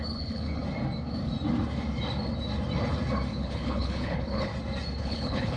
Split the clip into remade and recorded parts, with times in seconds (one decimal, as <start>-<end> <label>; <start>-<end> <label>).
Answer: 0.0-0.6 remade; 0.6-3.3 recorded; 3.3-4.5 remade; 4.5-5.0 recorded; 5.0-5.6 remade